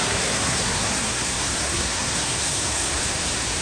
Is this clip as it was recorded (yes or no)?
no